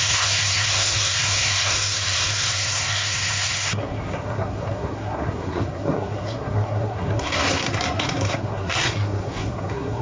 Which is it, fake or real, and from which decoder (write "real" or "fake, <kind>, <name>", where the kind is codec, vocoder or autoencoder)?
fake, codec, SNAC